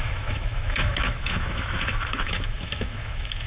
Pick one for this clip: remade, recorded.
remade